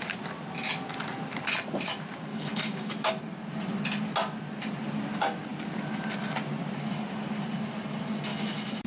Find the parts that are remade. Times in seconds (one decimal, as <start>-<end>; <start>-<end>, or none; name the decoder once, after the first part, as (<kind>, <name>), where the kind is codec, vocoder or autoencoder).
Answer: 2.3-3.1 (autoencoder, DAC-VAE); 8.3-8.9